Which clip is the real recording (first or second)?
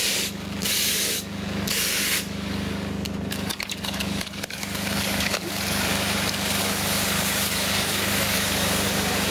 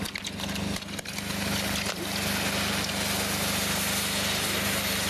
second